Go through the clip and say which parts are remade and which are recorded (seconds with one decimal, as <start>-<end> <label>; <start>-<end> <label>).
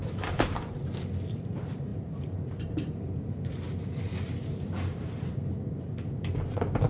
0.0-0.8 remade; 0.8-1.9 recorded; 1.9-5.5 remade; 5.5-6.9 recorded